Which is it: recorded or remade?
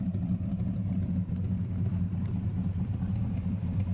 remade